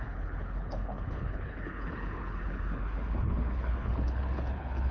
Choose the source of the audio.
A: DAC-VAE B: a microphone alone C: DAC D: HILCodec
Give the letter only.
D